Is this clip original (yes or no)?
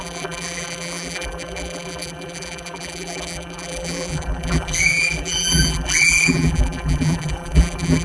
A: no